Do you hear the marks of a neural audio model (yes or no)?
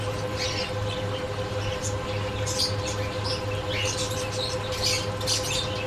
no